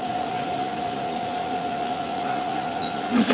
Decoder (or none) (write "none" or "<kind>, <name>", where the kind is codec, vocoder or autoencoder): vocoder, Vocos